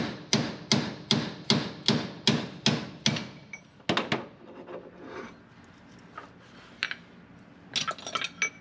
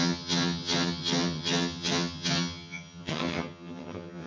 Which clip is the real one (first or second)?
first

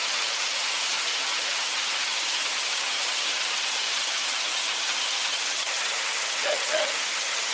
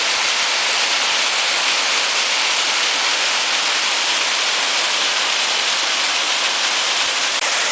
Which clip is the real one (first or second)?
second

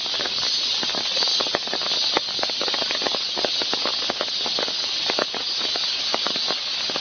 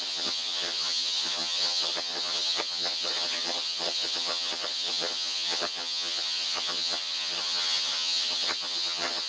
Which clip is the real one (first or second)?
first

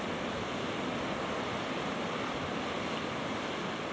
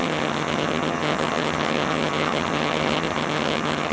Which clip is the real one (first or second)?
first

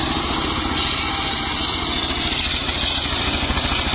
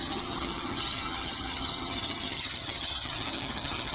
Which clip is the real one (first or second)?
first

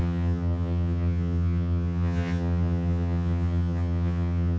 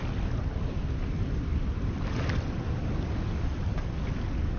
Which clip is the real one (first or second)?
second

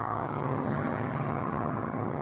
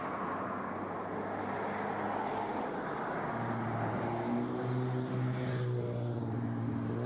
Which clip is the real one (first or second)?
second